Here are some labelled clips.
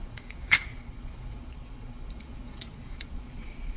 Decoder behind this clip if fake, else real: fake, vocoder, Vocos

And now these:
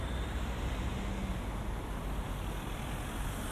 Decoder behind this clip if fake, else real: real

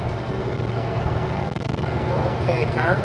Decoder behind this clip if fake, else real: fake, codec, SNAC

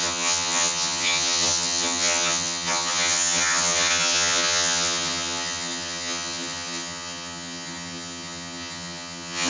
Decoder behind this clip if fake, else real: fake, vocoder, HiFi-GAN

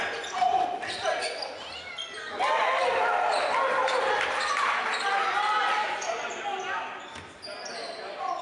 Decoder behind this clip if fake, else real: real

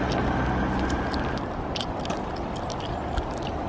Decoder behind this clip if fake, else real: real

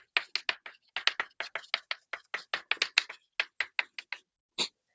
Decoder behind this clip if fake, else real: real